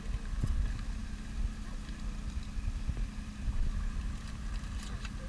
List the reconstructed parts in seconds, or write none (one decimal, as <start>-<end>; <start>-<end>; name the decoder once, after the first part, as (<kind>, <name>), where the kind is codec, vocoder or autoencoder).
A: 1.0-4.2 (vocoder, BigVGAN v2)